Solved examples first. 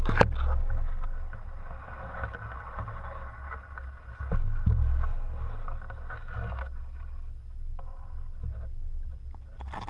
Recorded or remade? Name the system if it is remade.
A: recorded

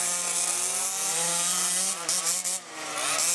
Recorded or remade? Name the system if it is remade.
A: recorded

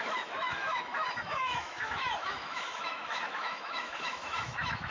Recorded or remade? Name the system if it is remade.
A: remade, autoencoder, DAC-VAE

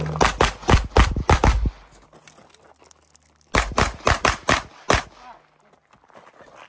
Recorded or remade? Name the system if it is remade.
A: recorded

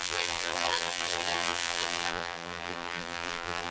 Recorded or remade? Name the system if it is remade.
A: remade, vocoder, BigVGAN v2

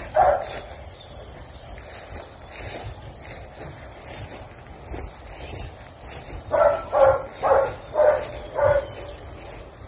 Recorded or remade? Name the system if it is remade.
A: recorded